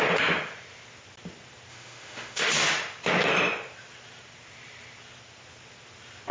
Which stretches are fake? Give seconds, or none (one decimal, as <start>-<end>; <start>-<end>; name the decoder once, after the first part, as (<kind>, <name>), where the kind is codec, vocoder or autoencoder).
1.7-2.5 (autoencoder, DAC-VAE)